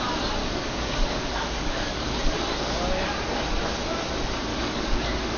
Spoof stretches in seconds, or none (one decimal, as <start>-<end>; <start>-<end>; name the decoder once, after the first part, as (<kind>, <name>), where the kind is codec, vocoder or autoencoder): 0.4-2.1 (codec, DAC); 4.5-5.4

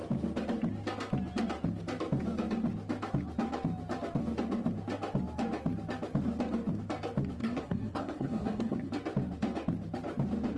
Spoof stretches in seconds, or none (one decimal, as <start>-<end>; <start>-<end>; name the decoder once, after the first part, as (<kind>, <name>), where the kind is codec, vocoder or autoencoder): 7.4-8.9 (codec, SNAC)

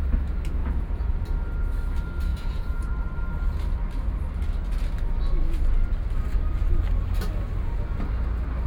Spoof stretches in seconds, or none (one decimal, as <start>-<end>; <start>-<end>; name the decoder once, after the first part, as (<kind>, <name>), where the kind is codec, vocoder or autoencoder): 0.6-1.1 (vocoder, Vocos); 2.3-2.9

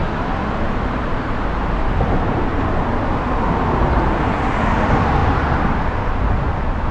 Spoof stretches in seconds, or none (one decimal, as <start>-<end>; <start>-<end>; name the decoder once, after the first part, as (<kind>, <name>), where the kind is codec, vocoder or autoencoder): none